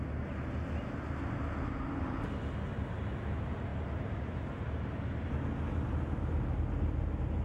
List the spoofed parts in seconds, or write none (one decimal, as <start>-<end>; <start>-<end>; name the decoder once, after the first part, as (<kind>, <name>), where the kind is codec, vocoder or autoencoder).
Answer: 3.7-4.6 (vocoder, BigVGAN v2)